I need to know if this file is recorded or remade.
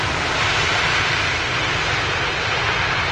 recorded